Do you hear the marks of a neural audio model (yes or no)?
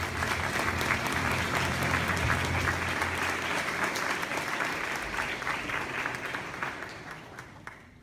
no